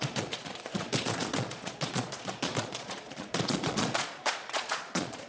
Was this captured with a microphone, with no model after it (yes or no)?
no